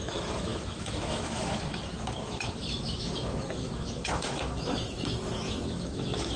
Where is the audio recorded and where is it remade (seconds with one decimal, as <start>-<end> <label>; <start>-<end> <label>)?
0.0-6.4 remade